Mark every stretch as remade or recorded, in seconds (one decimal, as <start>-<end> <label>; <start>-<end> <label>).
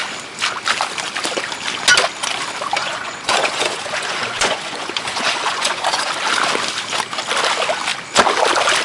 0.0-2.8 recorded; 2.8-6.1 remade; 6.1-8.8 recorded